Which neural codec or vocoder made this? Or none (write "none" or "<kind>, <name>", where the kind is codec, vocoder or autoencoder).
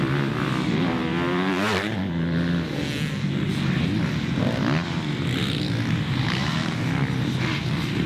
none